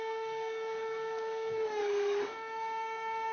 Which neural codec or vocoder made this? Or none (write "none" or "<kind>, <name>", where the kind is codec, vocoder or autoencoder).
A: codec, DAC